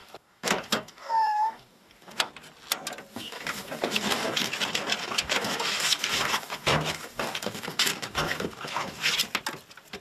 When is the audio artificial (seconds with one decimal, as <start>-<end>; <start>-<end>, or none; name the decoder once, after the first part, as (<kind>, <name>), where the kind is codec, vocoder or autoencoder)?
0.0-2.3 (codec, DAC); 3.1-4.5; 5.0-9.1